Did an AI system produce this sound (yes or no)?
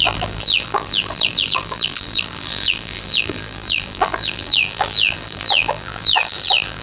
yes